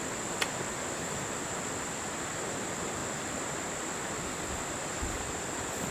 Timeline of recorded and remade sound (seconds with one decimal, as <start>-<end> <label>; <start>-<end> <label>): 0.0-5.9 recorded